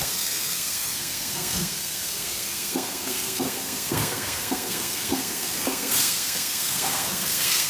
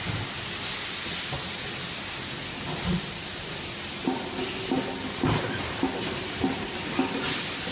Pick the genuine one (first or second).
second